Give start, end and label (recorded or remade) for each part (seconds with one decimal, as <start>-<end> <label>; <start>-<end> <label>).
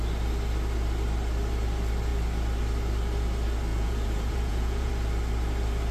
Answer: 0.0-3.7 recorded; 3.7-4.9 remade; 4.9-5.9 recorded